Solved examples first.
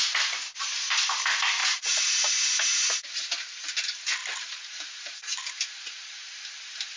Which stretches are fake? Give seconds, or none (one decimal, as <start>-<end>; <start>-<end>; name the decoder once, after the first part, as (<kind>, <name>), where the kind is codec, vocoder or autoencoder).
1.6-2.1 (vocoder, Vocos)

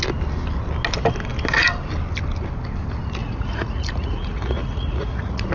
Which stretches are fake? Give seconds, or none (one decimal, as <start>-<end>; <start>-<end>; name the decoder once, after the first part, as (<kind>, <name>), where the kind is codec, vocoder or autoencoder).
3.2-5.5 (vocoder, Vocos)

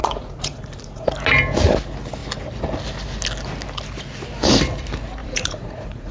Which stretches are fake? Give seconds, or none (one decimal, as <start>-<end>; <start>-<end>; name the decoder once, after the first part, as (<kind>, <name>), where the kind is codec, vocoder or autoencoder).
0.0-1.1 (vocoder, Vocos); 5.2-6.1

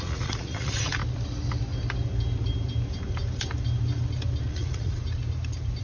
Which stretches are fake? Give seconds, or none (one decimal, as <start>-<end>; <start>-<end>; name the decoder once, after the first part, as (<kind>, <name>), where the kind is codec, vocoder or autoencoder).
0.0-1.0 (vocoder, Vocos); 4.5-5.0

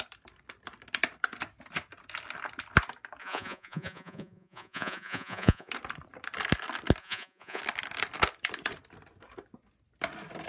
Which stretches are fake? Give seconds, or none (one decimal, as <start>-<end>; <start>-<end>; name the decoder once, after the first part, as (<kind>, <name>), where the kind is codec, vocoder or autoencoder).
3.2-5.7 (vocoder, Vocos); 7.0-7.6

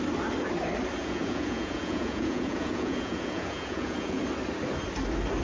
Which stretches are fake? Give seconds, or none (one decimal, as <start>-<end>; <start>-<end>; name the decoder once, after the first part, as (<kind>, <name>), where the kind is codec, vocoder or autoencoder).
1.0-4.2 (vocoder, Vocos)